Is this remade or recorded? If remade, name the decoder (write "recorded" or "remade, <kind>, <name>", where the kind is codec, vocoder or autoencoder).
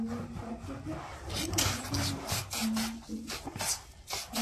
recorded